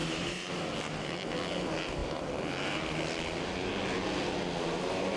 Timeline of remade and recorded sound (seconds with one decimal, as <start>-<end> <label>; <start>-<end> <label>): 0.0-0.5 remade; 0.5-5.2 recorded

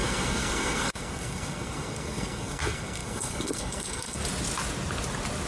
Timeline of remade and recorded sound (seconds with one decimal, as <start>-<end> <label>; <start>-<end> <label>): 0.0-4.2 remade; 4.2-5.5 recorded

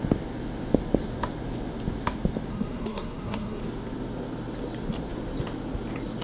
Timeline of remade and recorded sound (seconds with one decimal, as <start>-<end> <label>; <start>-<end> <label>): 0.0-2.5 recorded; 2.5-3.6 remade; 3.6-6.2 recorded

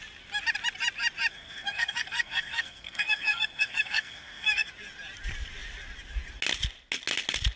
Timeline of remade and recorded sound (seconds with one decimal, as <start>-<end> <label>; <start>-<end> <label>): 0.0-1.3 recorded; 1.3-4.7 remade; 4.7-7.6 recorded

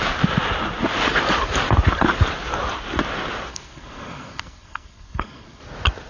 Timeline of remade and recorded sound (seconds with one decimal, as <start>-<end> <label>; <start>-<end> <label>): 0.0-3.5 recorded; 3.5-5.6 remade; 5.6-6.1 recorded